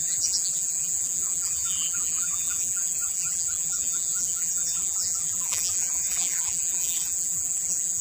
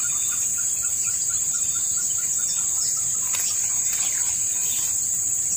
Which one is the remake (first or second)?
first